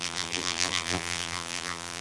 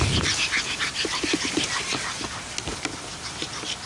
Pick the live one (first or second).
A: second